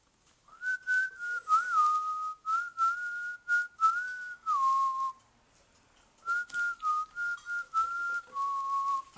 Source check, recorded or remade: recorded